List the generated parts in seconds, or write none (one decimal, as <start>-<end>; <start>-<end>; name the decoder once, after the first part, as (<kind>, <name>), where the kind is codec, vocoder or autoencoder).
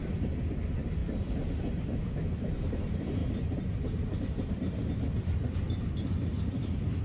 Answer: 0.0-1.0 (vocoder, BigVGAN v2); 1.7-3.2; 4.5-7.0